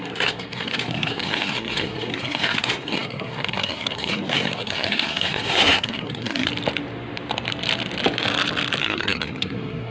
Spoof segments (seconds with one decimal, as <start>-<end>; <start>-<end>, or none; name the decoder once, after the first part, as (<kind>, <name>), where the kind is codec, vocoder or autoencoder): 0.0-6.5 (codec, SNAC); 8.8-9.9